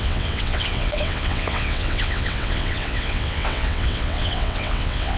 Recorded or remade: remade